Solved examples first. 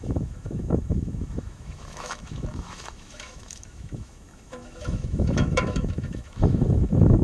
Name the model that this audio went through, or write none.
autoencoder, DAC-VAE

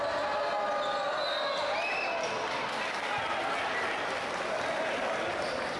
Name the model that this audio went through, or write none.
none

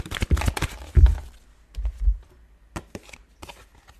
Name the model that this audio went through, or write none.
none